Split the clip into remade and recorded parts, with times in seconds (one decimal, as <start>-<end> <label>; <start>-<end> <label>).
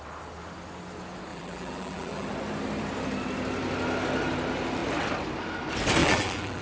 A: 0.0-1.3 recorded; 1.3-2.3 remade; 2.3-6.0 recorded; 6.0-6.6 remade